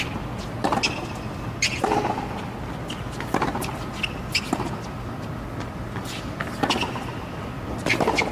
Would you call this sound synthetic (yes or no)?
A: no